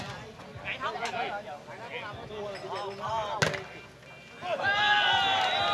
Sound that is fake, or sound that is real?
real